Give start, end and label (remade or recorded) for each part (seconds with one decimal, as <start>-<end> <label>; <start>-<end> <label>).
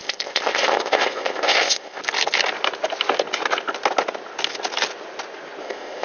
0.0-2.0 remade; 2.0-5.6 recorded; 5.6-6.0 remade